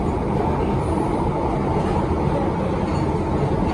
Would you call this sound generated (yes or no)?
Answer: no